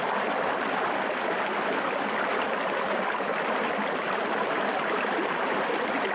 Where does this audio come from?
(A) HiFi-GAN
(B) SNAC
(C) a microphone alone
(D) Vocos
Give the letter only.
C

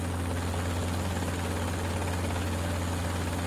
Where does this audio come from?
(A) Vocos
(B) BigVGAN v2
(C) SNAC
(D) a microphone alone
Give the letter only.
D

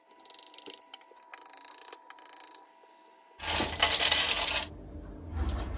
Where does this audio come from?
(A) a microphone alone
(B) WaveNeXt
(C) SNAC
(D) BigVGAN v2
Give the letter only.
A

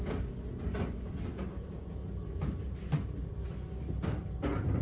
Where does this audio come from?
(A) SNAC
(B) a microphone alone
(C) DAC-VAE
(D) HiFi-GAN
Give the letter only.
B